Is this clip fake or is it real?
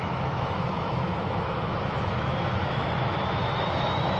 fake